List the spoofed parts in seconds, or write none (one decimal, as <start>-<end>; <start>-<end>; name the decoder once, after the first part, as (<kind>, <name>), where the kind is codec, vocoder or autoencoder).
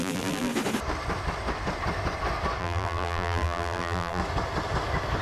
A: 0.0-0.5 (vocoder, BigVGAN v2); 2.6-4.2